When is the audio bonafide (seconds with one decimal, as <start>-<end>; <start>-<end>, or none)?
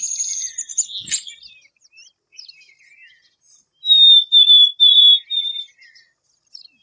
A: 0.0-6.8